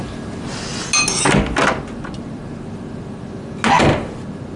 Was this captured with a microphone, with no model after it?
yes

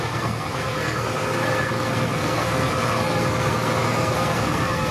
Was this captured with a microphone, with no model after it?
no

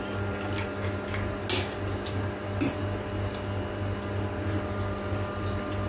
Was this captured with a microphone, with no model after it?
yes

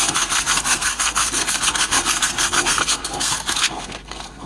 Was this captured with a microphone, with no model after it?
no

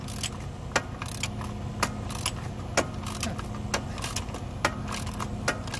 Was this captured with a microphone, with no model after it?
yes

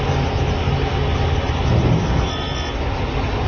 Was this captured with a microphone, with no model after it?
yes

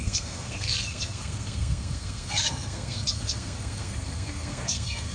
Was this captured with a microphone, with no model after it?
no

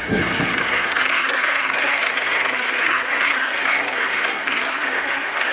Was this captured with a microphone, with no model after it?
no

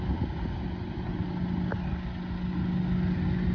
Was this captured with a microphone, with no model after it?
yes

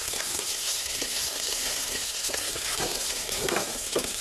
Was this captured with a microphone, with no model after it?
no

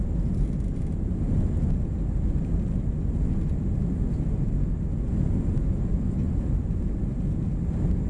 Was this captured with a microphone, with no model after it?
yes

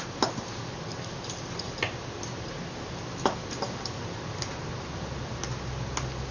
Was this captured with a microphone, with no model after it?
yes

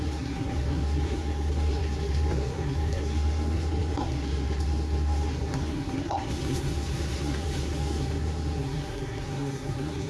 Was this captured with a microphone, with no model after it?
no